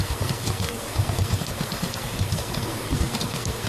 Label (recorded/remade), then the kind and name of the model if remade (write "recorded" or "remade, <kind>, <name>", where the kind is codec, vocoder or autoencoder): remade, codec, SNAC